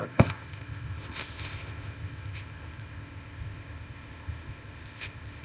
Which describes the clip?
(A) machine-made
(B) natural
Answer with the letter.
A